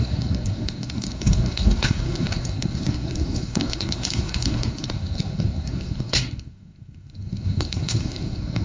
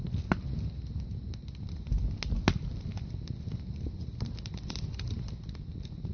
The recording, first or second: second